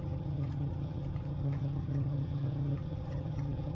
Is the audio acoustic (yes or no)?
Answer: no